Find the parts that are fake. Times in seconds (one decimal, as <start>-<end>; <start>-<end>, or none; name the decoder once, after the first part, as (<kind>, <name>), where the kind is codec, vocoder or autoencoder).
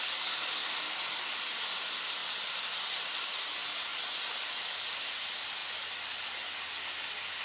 0.0-0.6 (vocoder, BigVGAN v2); 1.4-2.2; 3.0-3.9; 4.6-5.6; 7.0-7.4